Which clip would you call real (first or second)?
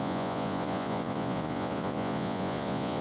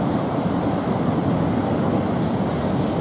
second